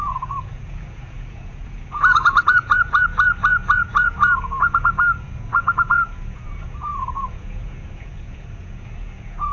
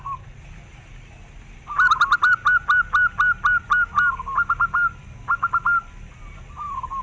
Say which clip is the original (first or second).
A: second